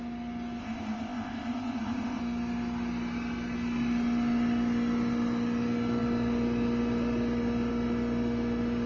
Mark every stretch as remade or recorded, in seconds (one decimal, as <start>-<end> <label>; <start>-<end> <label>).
0.0-0.6 recorded; 0.6-2.2 remade; 2.2-8.9 recorded